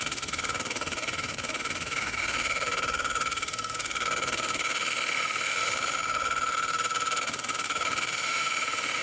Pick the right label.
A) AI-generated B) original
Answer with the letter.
A